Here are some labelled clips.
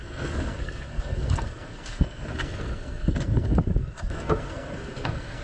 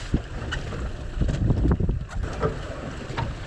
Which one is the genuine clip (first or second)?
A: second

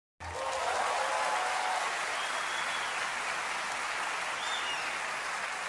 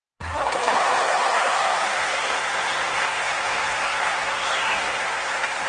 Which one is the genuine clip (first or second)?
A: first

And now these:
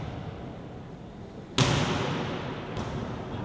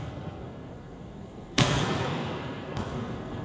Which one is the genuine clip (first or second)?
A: first